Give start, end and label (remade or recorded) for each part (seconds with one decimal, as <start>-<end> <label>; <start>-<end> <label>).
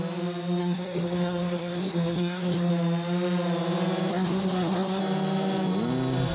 0.0-0.6 recorded; 0.6-2.7 remade; 2.7-4.1 recorded; 4.1-5.0 remade; 5.0-6.3 recorded